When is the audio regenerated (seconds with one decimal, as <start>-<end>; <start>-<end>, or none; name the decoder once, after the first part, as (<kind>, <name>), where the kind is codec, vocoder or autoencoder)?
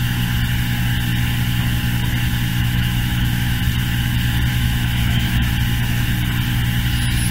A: 2.5-3.6 (autoencoder, DAC-VAE); 4.5-5.5